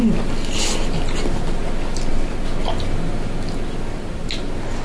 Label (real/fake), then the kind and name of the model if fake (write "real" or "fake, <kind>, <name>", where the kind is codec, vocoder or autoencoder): real